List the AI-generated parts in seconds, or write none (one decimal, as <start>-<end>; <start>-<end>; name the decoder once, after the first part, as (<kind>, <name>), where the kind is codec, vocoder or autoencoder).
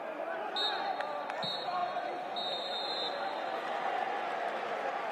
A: none